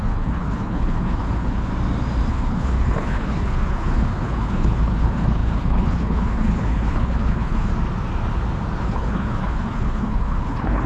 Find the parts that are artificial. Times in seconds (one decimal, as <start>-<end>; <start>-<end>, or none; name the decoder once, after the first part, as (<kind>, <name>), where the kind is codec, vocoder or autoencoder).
0.0-1.7 (codec, HILCodec); 2.3-7.7; 8.8-10.9